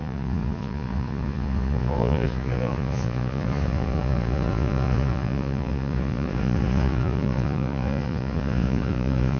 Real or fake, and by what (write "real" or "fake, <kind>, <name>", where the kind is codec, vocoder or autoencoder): fake, vocoder, Vocos